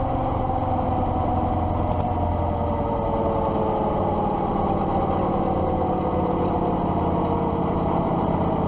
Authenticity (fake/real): real